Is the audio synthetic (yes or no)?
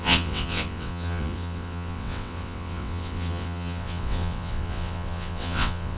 yes